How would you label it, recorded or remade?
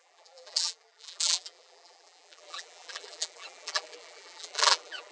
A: remade